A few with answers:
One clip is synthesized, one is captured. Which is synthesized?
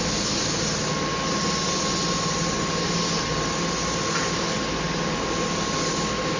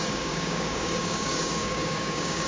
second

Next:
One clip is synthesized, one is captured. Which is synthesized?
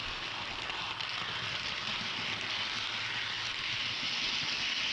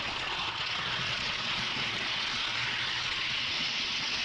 second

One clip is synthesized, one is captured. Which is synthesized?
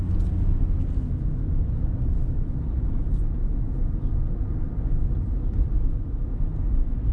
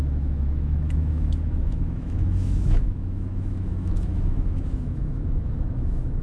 second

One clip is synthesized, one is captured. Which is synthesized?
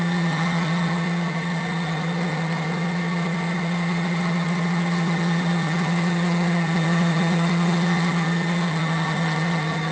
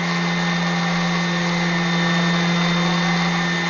first